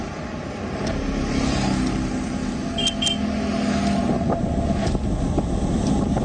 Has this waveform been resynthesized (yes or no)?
no